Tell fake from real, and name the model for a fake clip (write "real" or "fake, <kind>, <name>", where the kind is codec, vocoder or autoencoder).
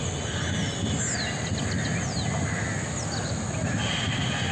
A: real